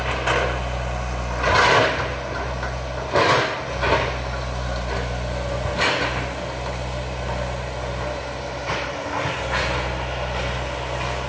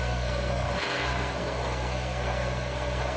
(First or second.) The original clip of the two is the first